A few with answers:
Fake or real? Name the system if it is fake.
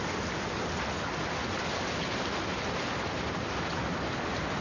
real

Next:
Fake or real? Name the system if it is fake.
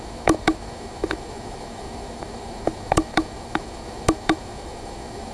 fake, autoencoder, DAC-VAE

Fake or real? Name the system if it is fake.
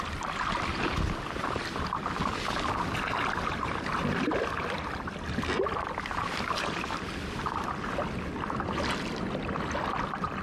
real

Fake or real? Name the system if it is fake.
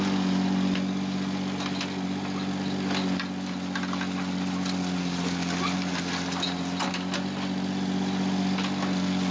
real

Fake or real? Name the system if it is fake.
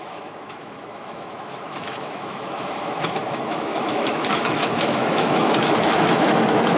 fake, autoencoder, DAC-VAE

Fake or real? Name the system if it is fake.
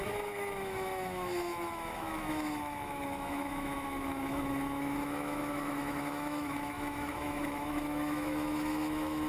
fake, autoencoder, DAC-VAE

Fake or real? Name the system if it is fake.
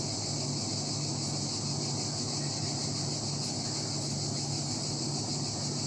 real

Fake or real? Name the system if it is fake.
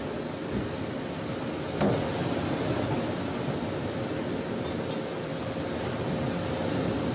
real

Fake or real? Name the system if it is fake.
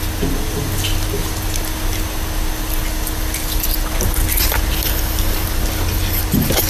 real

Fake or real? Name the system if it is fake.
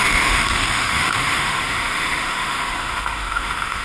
fake, autoencoder, DAC-VAE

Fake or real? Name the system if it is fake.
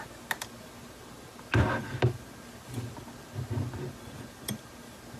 real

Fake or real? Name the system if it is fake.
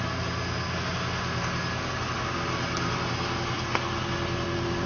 real